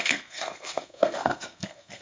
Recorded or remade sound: remade